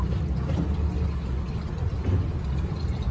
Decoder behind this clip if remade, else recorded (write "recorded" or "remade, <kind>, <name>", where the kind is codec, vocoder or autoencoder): recorded